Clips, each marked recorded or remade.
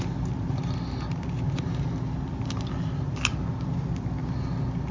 recorded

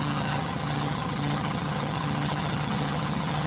remade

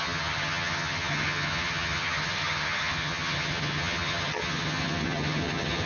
remade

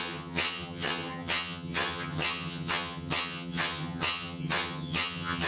remade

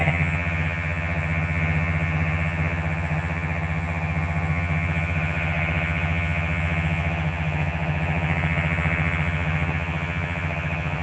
remade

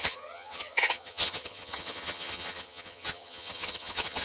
remade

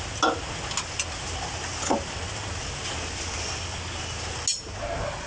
recorded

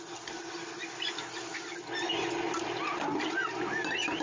recorded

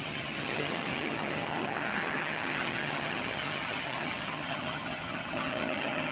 remade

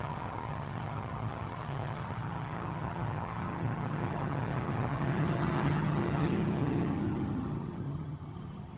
remade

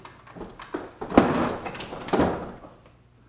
recorded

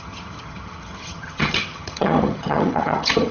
remade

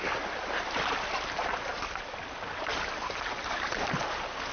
recorded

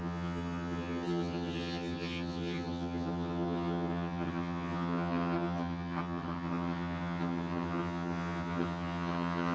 remade